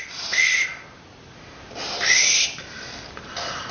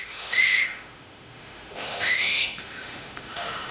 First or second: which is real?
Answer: first